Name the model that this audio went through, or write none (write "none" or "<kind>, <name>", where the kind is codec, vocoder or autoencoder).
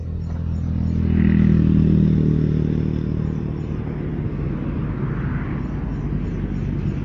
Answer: none